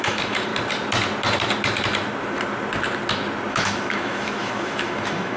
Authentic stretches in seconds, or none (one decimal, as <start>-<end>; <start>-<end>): 0.5-3.5